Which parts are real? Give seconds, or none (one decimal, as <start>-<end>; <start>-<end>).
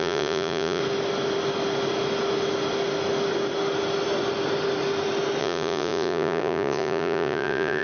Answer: 0.8-5.4